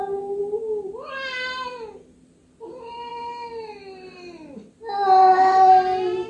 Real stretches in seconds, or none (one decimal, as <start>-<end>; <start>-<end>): 0.0-6.3

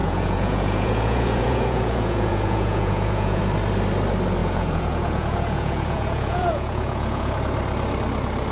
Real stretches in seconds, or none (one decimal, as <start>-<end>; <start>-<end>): 3.4-4.4; 7.3-8.5

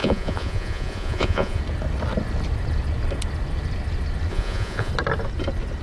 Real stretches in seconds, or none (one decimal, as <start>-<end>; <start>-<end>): 1.6-4.3; 4.9-5.8

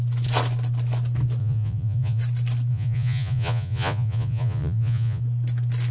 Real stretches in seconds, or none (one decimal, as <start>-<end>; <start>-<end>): 0.0-1.4; 2.2-2.7; 5.2-5.9

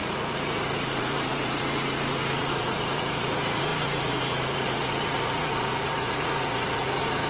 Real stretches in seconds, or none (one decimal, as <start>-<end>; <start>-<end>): none